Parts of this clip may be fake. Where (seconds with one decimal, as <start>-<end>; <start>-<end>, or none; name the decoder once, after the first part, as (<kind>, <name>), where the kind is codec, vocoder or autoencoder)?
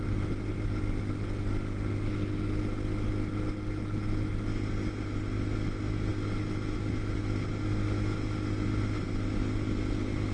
none